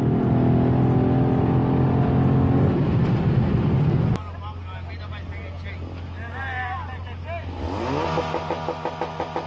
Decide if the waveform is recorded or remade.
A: recorded